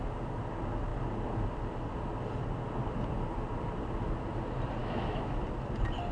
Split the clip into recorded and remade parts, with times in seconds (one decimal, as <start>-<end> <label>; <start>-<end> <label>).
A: 0.0-4.8 recorded; 4.8-5.4 remade; 5.4-6.1 recorded